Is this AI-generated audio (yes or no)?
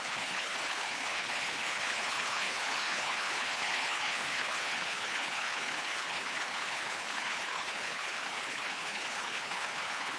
yes